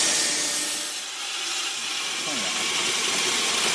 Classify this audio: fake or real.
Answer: real